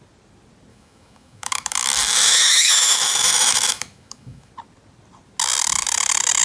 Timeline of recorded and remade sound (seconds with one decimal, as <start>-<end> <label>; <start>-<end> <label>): 0.0-0.7 recorded; 0.7-4.5 remade; 4.5-6.4 recorded